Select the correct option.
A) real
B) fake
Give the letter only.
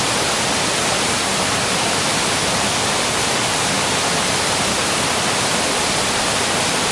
A